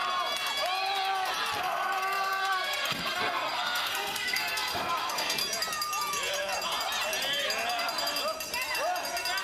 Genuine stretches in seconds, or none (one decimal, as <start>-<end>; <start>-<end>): 0.0-1.6; 5.4-9.4